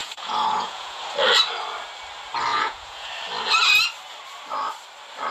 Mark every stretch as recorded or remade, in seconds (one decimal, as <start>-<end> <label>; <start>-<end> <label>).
0.0-1.0 remade; 1.0-2.5 recorded; 2.5-3.1 remade; 3.1-5.3 recorded

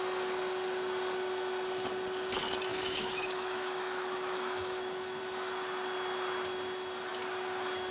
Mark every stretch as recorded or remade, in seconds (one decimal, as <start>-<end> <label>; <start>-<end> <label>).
0.0-2.7 recorded; 2.7-5.2 remade; 5.2-7.9 recorded